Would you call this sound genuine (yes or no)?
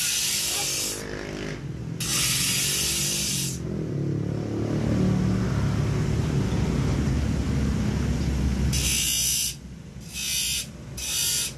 yes